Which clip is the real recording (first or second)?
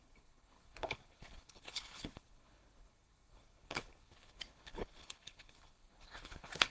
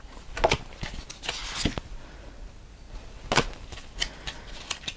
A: second